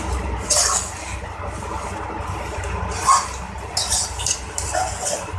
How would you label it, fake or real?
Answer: real